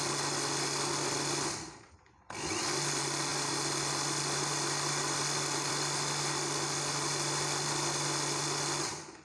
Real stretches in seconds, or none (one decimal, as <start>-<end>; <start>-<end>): 0.0-9.2